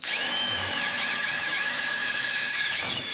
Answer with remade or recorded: remade